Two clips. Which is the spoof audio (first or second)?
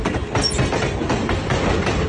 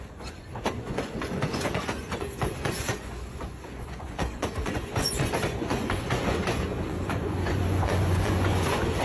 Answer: second